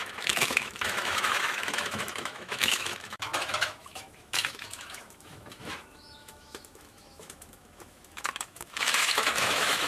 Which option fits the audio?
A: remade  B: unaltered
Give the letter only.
A